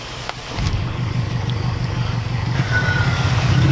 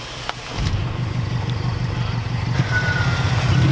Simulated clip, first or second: first